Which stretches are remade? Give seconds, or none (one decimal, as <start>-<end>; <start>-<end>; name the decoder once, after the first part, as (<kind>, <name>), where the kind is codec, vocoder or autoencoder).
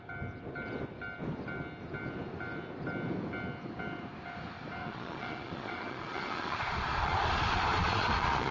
4.8-8.5 (vocoder, Vocos)